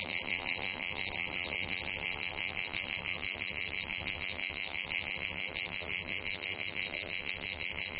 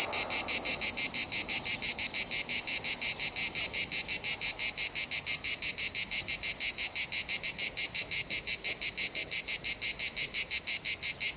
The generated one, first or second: first